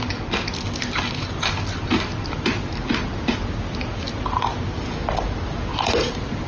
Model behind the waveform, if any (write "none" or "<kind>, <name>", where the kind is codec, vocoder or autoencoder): none